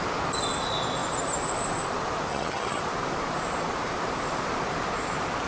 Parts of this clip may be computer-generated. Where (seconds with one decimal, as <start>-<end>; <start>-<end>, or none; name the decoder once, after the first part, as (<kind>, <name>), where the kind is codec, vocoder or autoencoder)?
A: 2.3-2.8 (vocoder, HiFi-GAN)

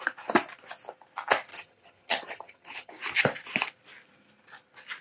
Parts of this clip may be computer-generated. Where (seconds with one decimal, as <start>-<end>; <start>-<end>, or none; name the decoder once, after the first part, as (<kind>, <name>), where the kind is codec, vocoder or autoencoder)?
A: 1.5-2.9 (vocoder, HiFi-GAN)

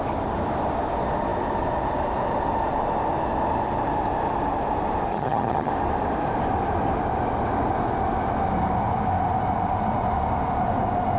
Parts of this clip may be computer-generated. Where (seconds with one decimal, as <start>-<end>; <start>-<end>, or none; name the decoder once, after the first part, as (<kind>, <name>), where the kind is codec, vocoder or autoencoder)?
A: 5.1-5.7 (vocoder, HiFi-GAN)